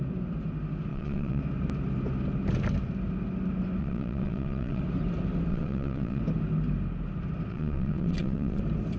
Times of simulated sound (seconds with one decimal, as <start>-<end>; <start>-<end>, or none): 0.9-1.4; 3.8-4.8; 5.5-6.2; 7.5-8.6